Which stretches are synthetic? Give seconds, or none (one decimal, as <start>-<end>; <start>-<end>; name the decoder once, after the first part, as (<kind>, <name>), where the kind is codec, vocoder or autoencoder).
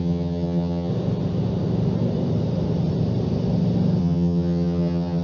0.0-0.9 (vocoder, HiFi-GAN); 4.0-5.2